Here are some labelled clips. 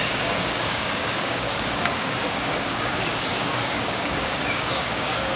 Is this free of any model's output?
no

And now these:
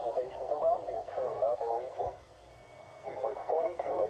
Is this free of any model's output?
no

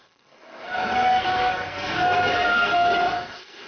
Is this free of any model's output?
no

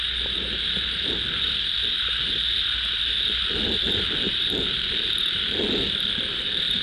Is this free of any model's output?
no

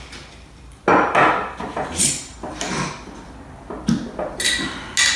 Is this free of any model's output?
yes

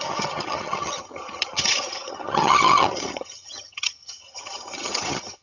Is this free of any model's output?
no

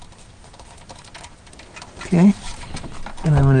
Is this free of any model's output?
yes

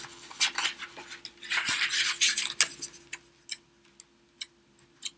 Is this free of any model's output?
yes